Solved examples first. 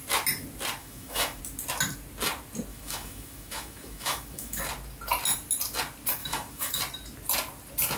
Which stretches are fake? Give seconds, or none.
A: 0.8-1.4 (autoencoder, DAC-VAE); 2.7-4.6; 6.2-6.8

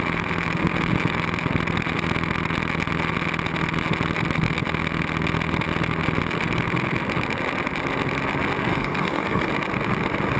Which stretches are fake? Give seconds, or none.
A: 8.7-9.5 (codec, SNAC)

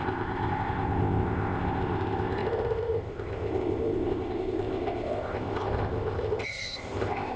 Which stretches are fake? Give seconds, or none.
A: 0.0-7.4 (codec, ZipCodec)